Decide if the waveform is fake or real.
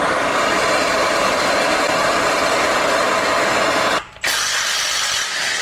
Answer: fake